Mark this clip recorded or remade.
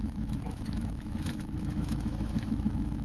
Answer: remade